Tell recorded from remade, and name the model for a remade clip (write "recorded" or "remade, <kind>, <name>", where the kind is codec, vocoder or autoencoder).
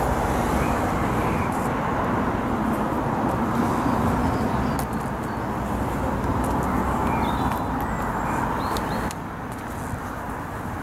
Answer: recorded